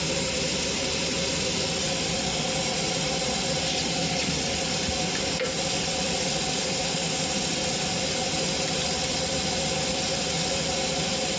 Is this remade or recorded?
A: recorded